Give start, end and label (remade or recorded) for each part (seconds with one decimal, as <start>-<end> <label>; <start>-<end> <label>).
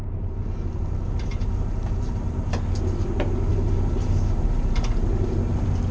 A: 0.0-2.4 remade; 2.4-3.5 recorded; 3.5-5.5 remade; 5.5-5.9 recorded